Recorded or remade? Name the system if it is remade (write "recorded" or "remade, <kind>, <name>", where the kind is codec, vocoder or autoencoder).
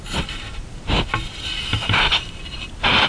recorded